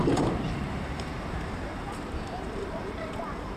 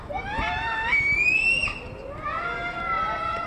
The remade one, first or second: first